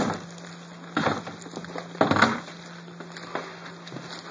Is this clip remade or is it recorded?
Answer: recorded